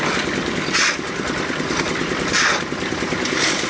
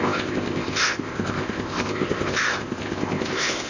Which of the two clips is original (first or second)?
first